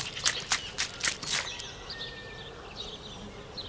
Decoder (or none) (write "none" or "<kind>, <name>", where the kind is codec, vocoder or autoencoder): none